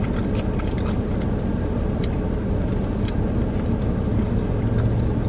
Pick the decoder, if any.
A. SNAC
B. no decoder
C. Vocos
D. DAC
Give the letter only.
B